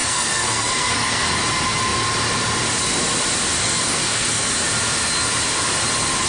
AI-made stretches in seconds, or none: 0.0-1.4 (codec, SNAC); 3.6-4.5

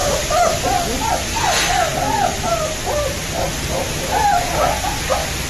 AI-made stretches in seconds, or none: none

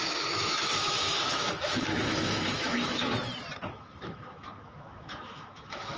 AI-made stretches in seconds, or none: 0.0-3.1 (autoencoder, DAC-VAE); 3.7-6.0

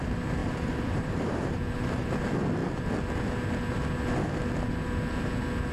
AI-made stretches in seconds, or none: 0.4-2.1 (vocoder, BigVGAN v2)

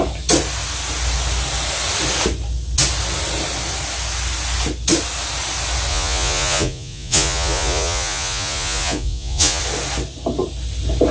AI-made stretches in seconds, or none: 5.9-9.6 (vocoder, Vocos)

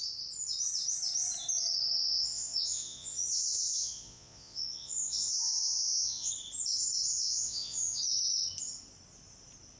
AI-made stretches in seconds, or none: 2.0-6.3 (vocoder, Vocos); 7.1-8.0